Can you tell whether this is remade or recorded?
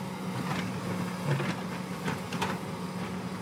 recorded